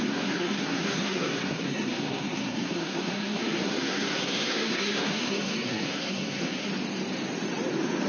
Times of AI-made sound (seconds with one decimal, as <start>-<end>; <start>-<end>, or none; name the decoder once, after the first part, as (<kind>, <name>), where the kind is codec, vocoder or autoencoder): 0.0-6.7 (codec, SNAC)